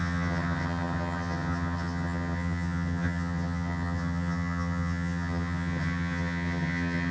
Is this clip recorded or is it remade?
remade